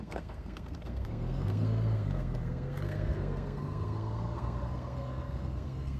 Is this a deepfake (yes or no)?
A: yes